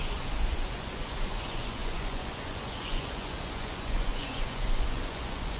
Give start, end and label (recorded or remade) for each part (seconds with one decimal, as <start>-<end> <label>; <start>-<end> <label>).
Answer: 0.0-5.6 remade